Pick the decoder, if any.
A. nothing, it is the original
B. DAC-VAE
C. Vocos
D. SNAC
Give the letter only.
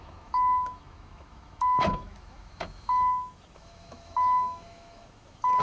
B